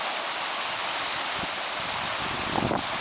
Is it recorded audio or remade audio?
recorded